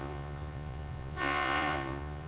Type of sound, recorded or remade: remade